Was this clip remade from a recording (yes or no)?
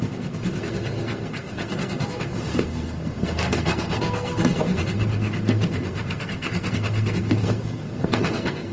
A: yes